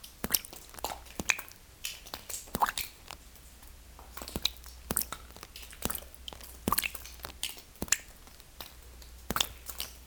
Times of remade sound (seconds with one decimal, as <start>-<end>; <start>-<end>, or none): none